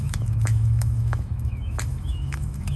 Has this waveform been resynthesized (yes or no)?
yes